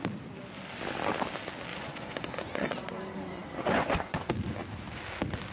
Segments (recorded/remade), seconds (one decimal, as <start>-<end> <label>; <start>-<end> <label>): 0.0-1.7 recorded; 1.7-4.3 remade; 4.3-5.5 recorded